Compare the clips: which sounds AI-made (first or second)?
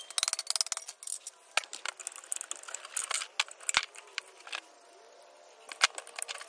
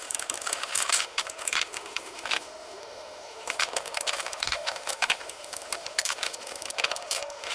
second